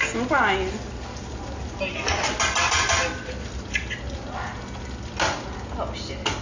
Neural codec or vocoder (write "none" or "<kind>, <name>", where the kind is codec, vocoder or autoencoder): none